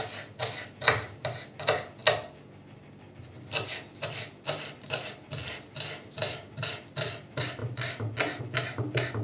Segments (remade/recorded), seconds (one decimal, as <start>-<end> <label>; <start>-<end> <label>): 0.0-9.2 recorded